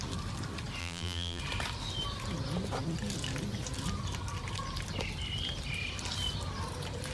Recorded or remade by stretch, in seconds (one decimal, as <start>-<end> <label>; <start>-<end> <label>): 0.0-0.8 recorded; 0.8-1.4 remade; 1.4-7.1 recorded

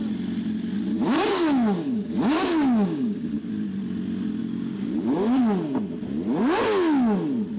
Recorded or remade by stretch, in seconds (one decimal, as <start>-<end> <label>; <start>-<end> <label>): 0.0-0.9 recorded; 0.9-3.5 remade; 3.5-4.4 recorded; 4.4-5.4 remade; 5.4-7.6 recorded

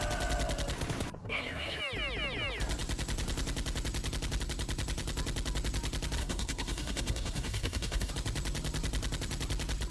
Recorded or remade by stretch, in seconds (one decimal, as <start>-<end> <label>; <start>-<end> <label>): 0.0-1.2 recorded; 1.2-1.8 remade; 1.8-6.2 recorded; 6.2-8.1 remade; 8.1-9.9 recorded

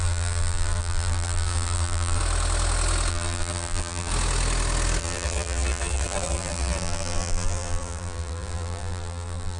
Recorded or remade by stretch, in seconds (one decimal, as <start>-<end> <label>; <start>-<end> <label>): 0.0-2.2 remade; 2.2-3.1 recorded; 3.1-4.1 remade; 4.1-5.0 recorded; 5.0-9.6 remade

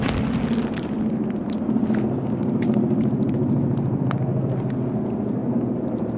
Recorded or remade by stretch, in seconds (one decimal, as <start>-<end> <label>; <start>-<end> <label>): 0.0-2.4 recorded; 2.4-4.0 remade; 4.0-5.4 recorded; 5.4-6.2 remade

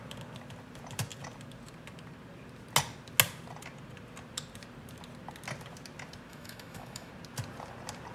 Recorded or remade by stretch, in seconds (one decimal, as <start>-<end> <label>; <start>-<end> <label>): 0.0-6.3 recorded; 6.3-7.1 remade; 7.1-8.1 recorded

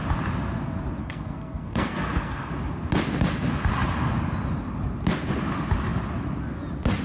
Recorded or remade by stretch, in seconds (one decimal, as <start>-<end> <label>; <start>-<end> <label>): 0.0-1.0 recorded; 1.0-2.5 remade; 2.5-7.0 recorded